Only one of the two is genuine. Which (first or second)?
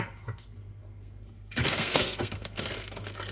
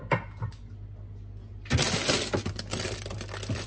second